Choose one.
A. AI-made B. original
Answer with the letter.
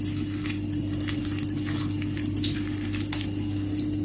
B